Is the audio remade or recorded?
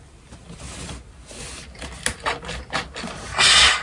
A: recorded